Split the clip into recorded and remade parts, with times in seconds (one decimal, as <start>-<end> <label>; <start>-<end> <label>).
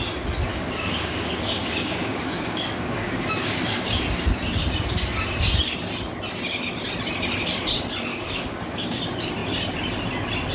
0.0-0.5 recorded; 0.5-3.5 remade; 3.5-8.1 recorded; 8.1-9.0 remade; 9.0-10.5 recorded